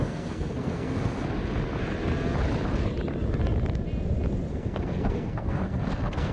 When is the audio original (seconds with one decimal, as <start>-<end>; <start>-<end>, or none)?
1.0-4.5